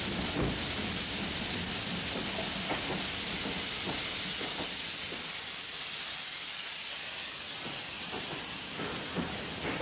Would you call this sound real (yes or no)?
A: yes